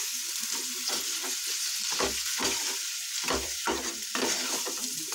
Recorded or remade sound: remade